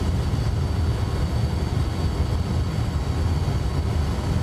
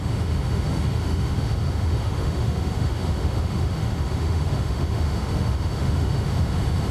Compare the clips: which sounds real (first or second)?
first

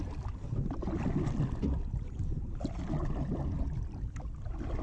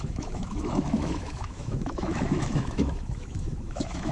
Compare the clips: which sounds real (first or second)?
first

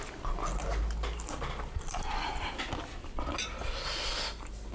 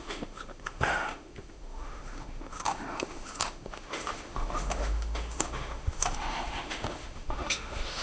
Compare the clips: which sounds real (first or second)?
first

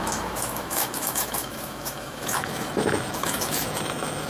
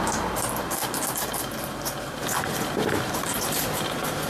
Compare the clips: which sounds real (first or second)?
second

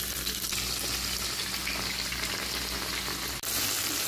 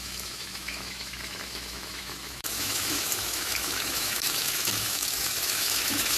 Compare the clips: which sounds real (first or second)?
first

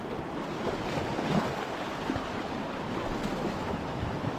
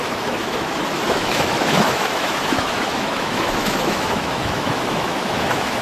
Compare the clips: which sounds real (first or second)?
first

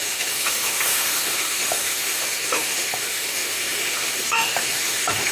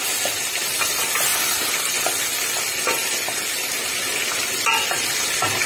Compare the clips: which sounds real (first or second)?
second